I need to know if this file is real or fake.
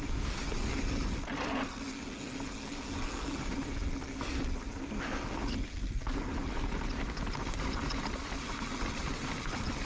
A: real